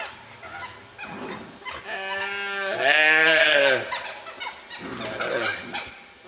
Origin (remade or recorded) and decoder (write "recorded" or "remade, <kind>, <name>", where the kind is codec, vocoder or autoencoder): recorded